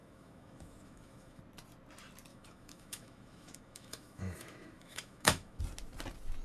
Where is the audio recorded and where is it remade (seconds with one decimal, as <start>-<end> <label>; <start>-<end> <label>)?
0.0-1.4 remade; 1.4-2.3 recorded; 2.3-5.6 remade; 5.6-6.4 recorded